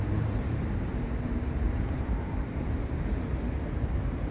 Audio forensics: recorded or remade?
remade